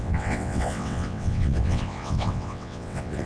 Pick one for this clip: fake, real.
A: fake